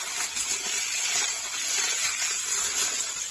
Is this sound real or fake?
real